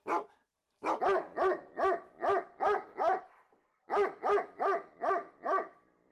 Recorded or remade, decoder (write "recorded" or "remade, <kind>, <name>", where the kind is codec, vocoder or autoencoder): recorded